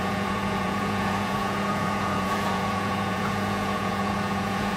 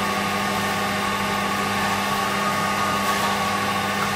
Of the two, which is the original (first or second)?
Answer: second